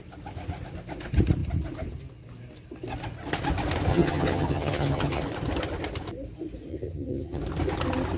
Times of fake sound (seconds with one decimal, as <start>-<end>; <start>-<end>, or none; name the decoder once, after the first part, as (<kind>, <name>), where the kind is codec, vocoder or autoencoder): 3.9-5.2 (vocoder, HiFi-GAN); 6.7-7.4